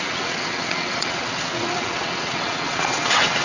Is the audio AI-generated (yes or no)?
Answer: yes